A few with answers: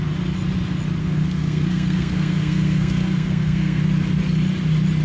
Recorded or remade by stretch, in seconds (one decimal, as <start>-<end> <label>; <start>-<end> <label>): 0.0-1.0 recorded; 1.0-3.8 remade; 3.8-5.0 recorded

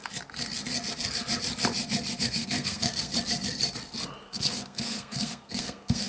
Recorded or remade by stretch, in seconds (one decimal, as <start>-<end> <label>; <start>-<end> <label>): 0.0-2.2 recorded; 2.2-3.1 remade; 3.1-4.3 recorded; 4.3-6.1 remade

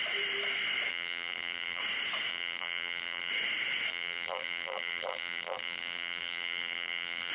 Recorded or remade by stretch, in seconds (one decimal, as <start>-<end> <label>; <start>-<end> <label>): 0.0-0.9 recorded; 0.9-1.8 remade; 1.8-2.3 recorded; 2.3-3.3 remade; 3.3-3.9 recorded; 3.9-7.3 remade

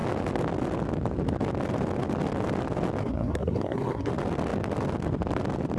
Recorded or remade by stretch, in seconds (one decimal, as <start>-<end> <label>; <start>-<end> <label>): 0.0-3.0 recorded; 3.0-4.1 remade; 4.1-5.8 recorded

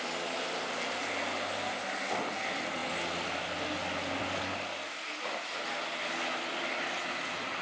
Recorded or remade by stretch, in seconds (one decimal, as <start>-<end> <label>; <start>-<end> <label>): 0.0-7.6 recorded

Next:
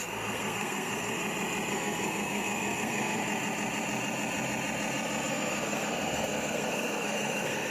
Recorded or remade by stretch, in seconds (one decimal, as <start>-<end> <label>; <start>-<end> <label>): 0.0-1.2 remade; 1.2-1.7 recorded; 1.7-3.2 remade; 3.2-5.3 recorded; 5.3-7.7 remade

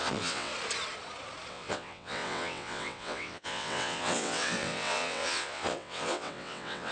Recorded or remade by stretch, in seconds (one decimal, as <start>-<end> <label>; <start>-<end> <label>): 0.0-0.5 remade; 0.5-1.5 recorded; 1.5-6.9 remade